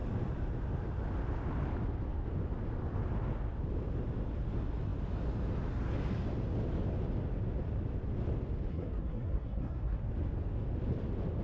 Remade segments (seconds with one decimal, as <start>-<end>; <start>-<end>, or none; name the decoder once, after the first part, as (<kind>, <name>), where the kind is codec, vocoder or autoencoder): 8.7-10.0 (codec, SNAC)